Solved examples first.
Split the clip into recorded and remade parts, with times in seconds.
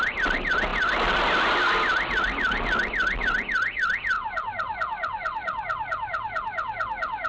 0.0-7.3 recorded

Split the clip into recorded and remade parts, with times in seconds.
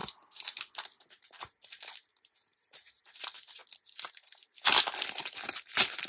0.0-1.1 recorded; 1.1-3.6 remade; 3.6-4.1 recorded; 4.1-4.7 remade; 4.7-5.6 recorded; 5.6-6.1 remade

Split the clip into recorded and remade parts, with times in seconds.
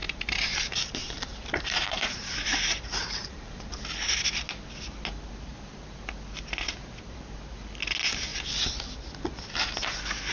0.0-3.8 remade; 3.8-10.3 recorded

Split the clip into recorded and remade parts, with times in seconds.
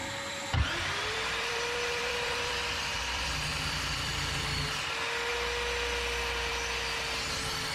0.0-4.4 remade; 4.4-7.7 recorded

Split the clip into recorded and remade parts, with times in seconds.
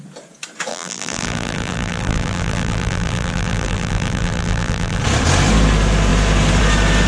0.0-0.7 recorded; 0.7-5.0 remade; 5.0-7.1 recorded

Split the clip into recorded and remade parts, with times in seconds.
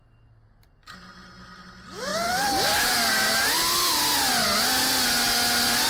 0.0-5.9 recorded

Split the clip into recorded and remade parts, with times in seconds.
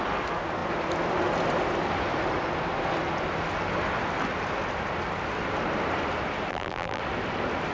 0.0-6.5 recorded; 6.5-7.0 remade; 7.0-7.7 recorded